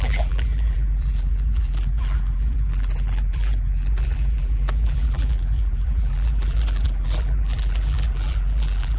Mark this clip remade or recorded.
remade